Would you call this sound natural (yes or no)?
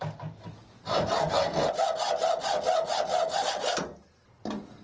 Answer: yes